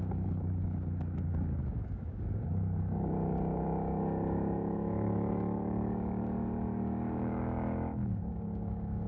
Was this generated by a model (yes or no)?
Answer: yes